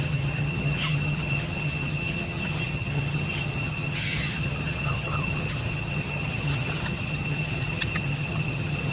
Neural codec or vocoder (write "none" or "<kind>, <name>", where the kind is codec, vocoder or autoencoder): vocoder, HiFi-GAN